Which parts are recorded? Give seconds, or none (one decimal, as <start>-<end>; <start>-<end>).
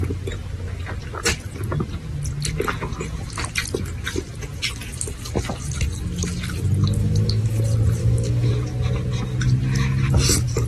0.0-7.0; 7.6-8.0; 8.5-10.7